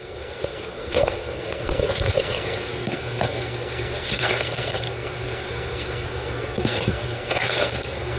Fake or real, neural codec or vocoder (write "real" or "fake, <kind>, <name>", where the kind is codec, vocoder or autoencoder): fake, codec, SNAC